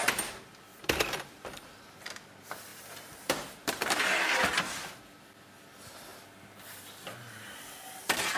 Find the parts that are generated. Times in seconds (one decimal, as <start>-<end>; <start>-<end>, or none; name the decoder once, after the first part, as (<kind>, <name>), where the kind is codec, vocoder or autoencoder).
0.7-1.8 (vocoder, BigVGAN v2); 2.7-4.9; 6.1-7.6